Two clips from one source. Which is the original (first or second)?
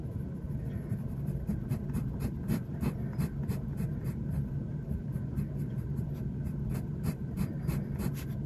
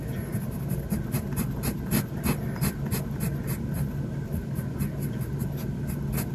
second